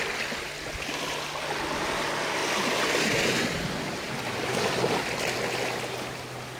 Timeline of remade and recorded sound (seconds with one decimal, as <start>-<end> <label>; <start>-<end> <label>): 0.0-6.6 recorded